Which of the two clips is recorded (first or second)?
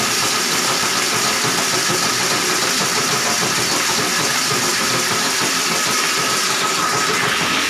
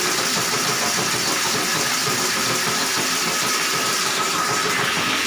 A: second